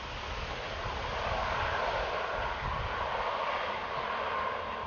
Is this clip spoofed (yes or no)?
no